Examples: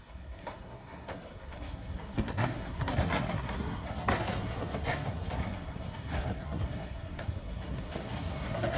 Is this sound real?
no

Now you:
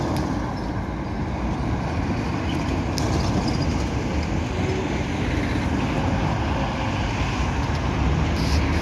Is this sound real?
yes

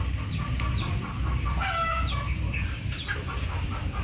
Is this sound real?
yes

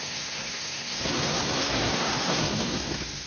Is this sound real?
no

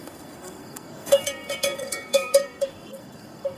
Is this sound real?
no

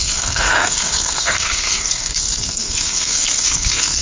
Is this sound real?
no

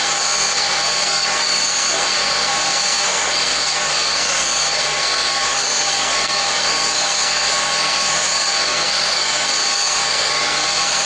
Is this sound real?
no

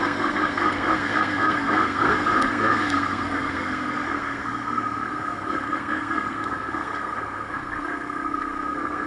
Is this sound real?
no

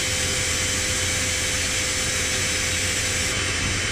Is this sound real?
yes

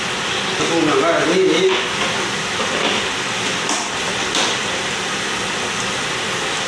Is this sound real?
yes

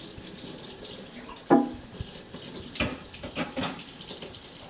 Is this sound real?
yes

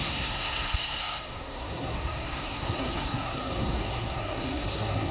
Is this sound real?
no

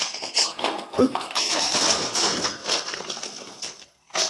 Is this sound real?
no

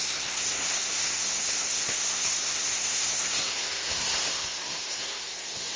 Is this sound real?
no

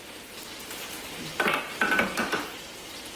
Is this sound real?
yes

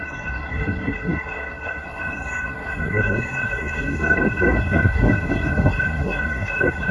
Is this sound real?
no